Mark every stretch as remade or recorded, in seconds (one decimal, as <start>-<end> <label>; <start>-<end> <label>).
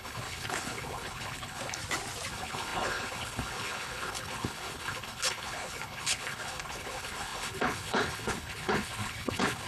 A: 0.0-1.8 remade; 1.8-2.3 recorded; 2.3-9.7 remade